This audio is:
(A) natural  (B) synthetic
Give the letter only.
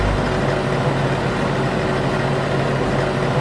A